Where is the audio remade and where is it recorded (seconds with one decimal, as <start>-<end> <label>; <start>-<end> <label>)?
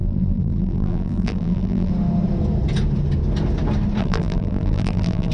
0.0-1.9 remade; 1.9-4.0 recorded; 4.0-5.3 remade